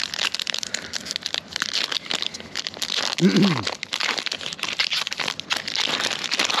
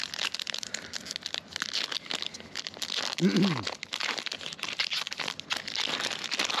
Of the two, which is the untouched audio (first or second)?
second